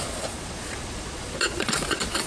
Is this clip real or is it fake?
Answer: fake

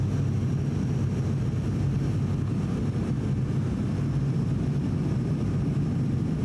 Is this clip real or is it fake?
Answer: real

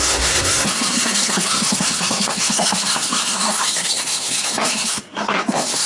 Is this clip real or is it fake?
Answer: fake